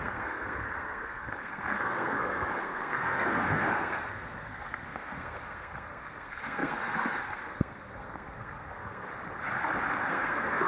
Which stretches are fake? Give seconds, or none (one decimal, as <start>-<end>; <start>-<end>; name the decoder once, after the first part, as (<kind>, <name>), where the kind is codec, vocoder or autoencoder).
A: 0.0-9.1 (codec, SNAC); 10.1-10.7